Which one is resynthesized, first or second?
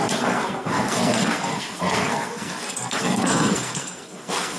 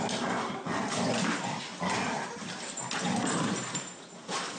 first